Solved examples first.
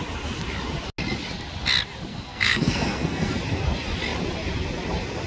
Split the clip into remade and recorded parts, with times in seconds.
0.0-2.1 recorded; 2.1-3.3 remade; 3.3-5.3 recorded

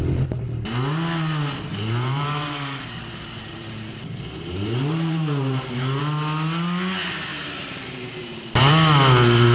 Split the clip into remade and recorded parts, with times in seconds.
0.0-1.7 recorded; 1.7-6.0 remade; 6.0-7.3 recorded; 7.3-8.7 remade; 8.7-9.5 recorded

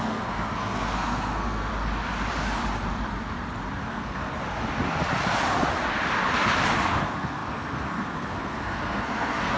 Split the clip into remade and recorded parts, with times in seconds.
0.0-1.7 remade; 1.7-3.9 recorded; 3.9-4.3 remade; 4.3-7.0 recorded; 7.0-9.6 remade

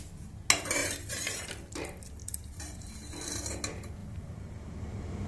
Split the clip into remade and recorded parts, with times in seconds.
0.0-0.8 recorded; 0.8-1.5 remade; 1.5-2.2 recorded; 2.2-2.9 remade; 2.9-4.0 recorded; 4.0-5.3 remade